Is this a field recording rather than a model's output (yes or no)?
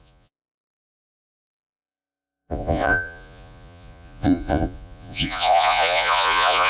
no